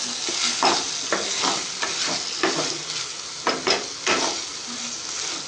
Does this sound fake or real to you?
real